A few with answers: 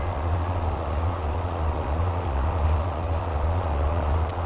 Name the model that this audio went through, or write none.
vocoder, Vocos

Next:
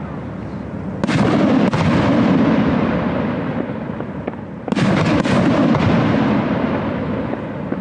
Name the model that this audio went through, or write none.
none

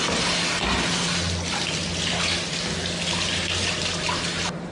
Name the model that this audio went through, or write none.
none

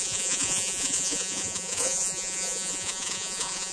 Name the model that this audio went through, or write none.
vocoder, Vocos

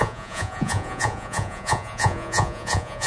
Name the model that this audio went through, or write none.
vocoder, Vocos